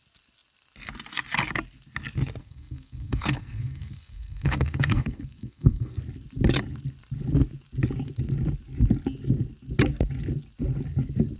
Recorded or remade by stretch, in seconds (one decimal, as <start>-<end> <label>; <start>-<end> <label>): 0.0-2.4 recorded; 2.4-6.0 remade; 6.0-11.4 recorded